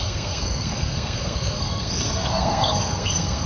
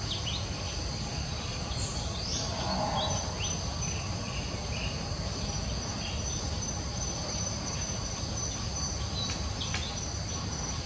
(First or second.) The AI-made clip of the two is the first